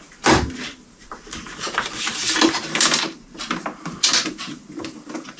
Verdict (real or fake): fake